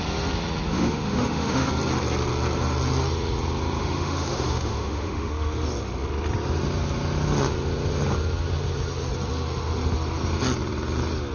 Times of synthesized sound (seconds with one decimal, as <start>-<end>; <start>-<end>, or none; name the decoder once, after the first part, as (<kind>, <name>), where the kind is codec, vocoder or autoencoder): 0.7-1.7 (autoencoder, DAC-VAE); 3.8-5.3